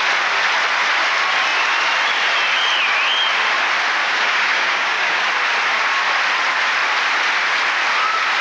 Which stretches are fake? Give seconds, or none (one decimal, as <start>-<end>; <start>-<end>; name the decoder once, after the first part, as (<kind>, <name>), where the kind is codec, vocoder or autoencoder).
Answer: 4.0-5.3 (codec, DAC)